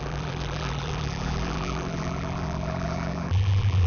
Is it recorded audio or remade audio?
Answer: remade